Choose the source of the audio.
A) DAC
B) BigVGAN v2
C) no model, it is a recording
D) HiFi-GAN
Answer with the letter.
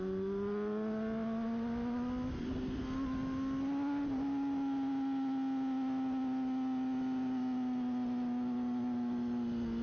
C